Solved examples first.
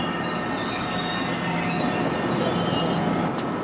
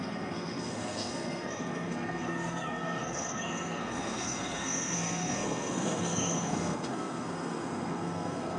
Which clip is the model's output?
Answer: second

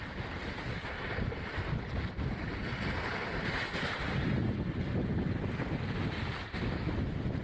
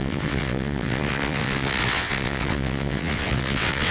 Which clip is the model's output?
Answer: second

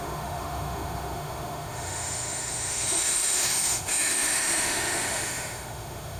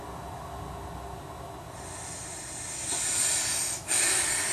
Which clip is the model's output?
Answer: first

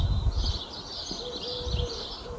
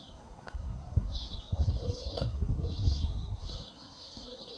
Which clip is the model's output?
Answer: second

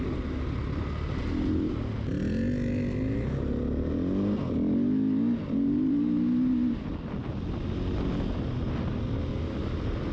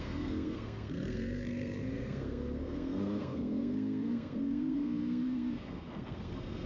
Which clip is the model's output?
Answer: second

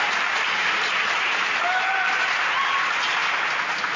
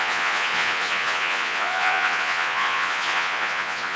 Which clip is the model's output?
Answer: second